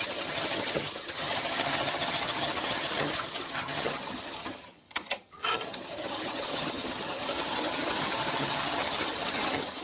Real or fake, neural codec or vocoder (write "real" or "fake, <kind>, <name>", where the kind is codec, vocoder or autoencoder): fake, vocoder, HiFi-GAN